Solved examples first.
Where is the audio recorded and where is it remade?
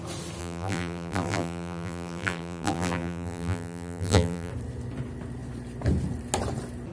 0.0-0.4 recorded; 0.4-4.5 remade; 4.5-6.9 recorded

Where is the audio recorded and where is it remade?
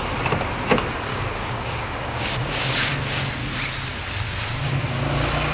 0.0-1.1 recorded; 1.1-2.9 remade; 2.9-5.5 recorded